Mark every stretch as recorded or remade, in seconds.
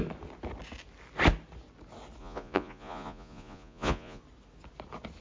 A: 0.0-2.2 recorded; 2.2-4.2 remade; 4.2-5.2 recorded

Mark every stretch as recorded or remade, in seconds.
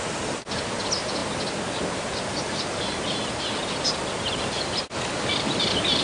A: 0.0-6.0 recorded